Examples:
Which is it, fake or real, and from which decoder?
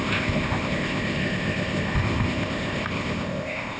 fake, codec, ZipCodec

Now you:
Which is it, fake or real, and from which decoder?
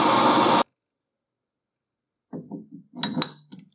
real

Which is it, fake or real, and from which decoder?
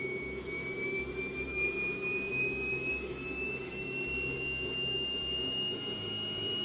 fake, autoencoder, DAC-VAE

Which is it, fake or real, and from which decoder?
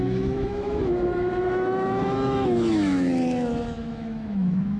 fake, autoencoder, DAC-VAE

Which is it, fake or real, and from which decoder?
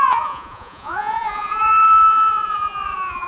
fake, vocoder, Vocos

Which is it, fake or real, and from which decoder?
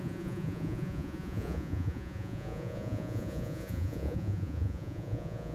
fake, vocoder, Vocos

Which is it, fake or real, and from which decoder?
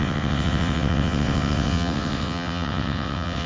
fake, vocoder, WaveNeXt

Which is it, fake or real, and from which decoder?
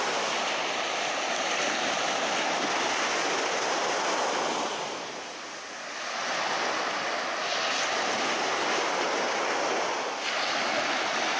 real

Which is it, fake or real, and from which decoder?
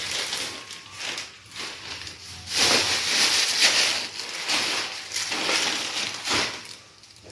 real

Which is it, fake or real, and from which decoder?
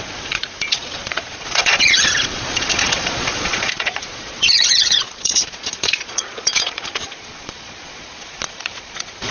fake, vocoder, Vocos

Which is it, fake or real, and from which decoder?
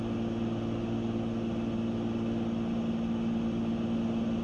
real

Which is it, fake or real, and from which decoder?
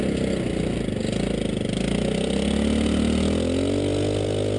real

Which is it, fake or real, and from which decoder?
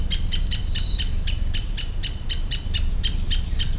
real